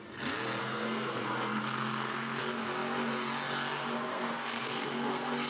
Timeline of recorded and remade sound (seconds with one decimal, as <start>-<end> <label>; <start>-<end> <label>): 0.0-0.6 recorded; 0.6-2.4 remade; 2.4-4.1 recorded; 4.1-5.5 remade